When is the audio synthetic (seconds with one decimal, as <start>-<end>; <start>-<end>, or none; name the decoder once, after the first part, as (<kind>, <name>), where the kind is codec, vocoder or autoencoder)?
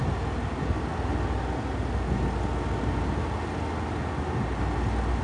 none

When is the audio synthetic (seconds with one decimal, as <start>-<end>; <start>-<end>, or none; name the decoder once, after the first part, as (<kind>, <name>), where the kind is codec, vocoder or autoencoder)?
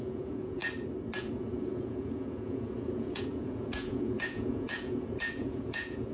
0.0-0.6 (vocoder, Vocos); 1.2-6.1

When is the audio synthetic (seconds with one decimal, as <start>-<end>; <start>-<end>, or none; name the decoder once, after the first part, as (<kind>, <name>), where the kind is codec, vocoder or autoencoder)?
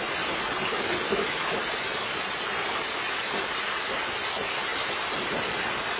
none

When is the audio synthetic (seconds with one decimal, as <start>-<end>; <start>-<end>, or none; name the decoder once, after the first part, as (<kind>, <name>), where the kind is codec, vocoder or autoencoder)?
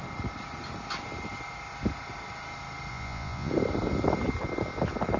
2.9-3.5 (vocoder, Vocos)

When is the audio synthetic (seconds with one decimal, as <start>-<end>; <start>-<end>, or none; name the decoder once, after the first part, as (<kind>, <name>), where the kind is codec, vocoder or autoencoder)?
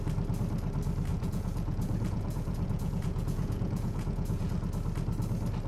1.1-4.5 (vocoder, Vocos)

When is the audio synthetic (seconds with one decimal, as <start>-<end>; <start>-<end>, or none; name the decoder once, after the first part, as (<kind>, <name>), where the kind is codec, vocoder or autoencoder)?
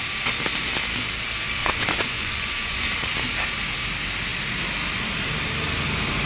1.6-2.9 (vocoder, Vocos)